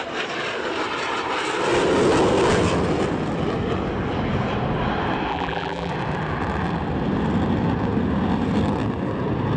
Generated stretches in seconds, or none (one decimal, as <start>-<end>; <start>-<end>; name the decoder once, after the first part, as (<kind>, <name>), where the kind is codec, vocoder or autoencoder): 5.3-5.9 (vocoder, BigVGAN v2)